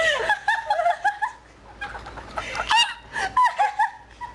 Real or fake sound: real